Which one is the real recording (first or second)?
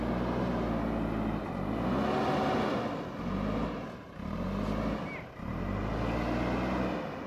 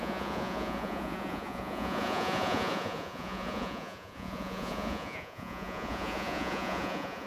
first